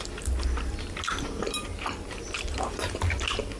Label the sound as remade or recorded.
recorded